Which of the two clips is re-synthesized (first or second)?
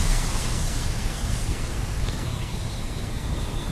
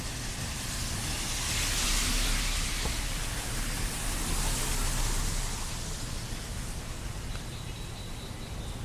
first